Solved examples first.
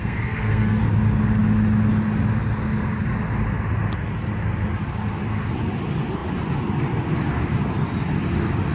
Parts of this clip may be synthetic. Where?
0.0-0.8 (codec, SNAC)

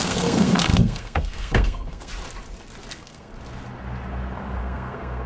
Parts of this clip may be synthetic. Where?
0.0-2.1 (codec, SNAC); 2.9-3.3; 4.6-5.3

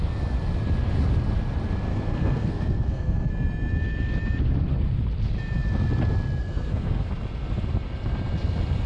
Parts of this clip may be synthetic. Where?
1.9-3.3 (codec, SNAC); 6.4-7.1

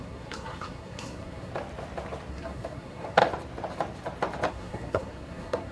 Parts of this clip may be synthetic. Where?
0.0-1.5 (codec, SNAC); 2.3-3.2; 4.5-5.7

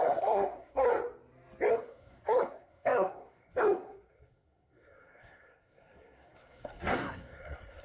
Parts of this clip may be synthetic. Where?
0.0-0.9 (codec, SNAC); 1.7-7.8

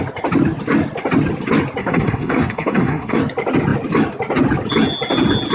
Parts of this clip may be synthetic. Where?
1.8-3.2 (codec, SNAC)